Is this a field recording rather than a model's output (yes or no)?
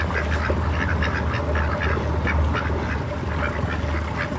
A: yes